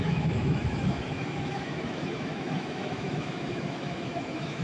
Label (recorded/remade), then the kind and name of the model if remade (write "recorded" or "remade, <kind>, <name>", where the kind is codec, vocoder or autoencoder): remade, autoencoder, DAC-VAE